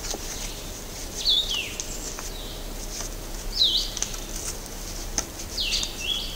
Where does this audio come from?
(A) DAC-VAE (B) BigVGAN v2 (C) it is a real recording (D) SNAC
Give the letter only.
C